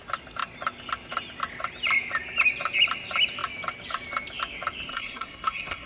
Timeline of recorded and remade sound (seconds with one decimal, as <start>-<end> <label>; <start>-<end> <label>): 0.0-4.9 recorded; 4.9-5.9 remade